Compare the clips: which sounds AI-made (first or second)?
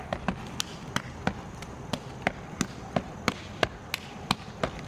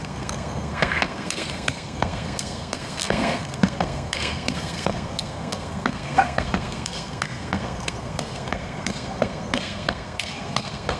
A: second